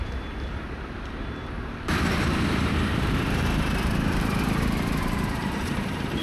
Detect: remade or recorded remade